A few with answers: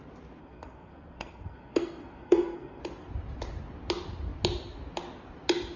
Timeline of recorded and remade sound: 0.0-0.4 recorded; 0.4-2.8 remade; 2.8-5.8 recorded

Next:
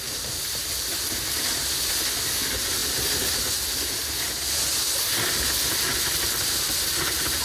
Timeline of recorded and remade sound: 0.0-7.4 recorded

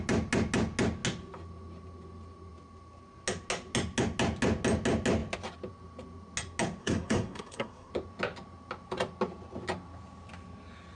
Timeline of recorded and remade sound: 0.0-6.8 recorded; 6.8-7.9 remade; 7.9-11.0 recorded

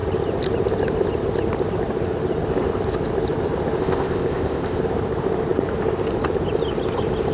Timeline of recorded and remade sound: 0.0-3.8 recorded; 3.8-4.8 remade; 4.8-7.3 recorded

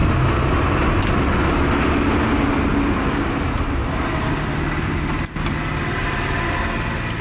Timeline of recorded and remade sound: 0.0-7.2 recorded

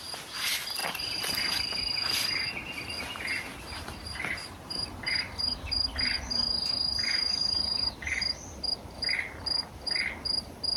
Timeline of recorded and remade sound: 0.0-3.5 recorded; 3.5-8.2 remade; 8.2-10.8 recorded